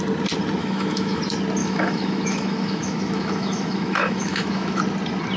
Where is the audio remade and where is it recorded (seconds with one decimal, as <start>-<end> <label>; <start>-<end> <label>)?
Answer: 0.0-0.6 recorded; 0.6-1.2 remade; 1.2-1.6 recorded; 1.6-4.8 remade; 4.8-5.4 recorded